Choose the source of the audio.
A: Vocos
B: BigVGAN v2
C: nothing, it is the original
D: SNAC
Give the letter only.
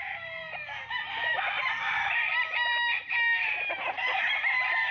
C